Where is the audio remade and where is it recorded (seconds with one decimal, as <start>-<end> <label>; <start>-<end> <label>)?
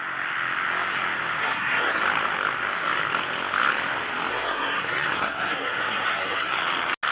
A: 0.0-1.4 recorded; 1.4-2.0 remade; 2.0-4.3 recorded; 4.3-6.6 remade; 6.6-7.1 recorded